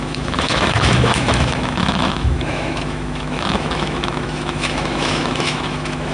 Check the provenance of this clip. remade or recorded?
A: remade